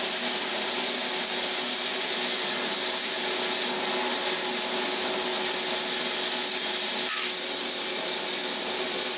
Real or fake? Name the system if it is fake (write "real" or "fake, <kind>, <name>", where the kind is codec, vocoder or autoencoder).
real